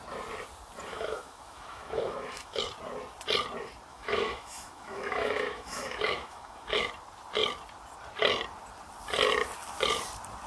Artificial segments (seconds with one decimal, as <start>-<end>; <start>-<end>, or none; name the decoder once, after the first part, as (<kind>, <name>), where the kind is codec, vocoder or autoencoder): 0.9-2.6 (autoencoder, DAC-VAE); 3.9-6.9